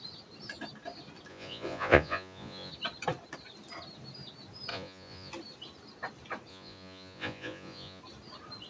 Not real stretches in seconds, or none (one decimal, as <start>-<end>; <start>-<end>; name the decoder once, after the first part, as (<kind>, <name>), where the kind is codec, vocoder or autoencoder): 1.3-2.7 (vocoder, Vocos); 4.7-5.3; 6.5-8.0